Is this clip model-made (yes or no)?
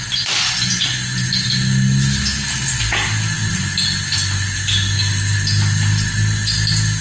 no